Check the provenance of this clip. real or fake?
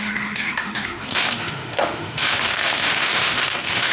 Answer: fake